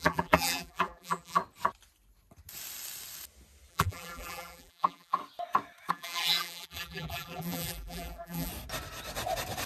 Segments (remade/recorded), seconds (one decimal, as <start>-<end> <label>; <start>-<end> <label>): 0.0-1.4 remade; 1.4-3.7 recorded; 3.7-5.2 remade; 5.2-5.9 recorded; 5.9-8.5 remade; 8.5-9.7 recorded